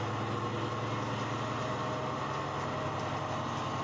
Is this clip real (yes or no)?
yes